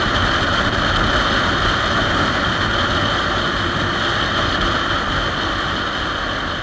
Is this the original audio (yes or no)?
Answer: yes